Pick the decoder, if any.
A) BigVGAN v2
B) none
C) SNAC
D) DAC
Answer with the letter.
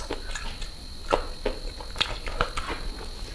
B